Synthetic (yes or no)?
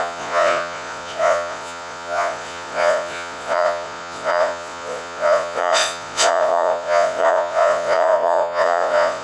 yes